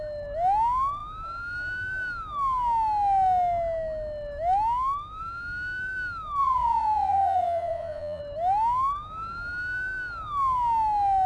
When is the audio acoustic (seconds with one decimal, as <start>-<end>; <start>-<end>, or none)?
0.0-6.4; 8.2-11.3

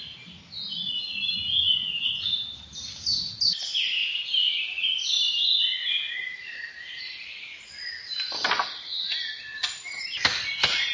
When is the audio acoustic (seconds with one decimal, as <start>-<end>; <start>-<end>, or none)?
0.0-4.0; 7.0-10.9